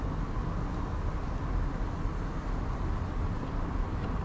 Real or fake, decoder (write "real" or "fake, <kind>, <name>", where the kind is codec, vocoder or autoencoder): real